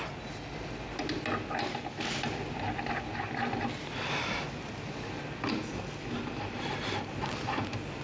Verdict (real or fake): real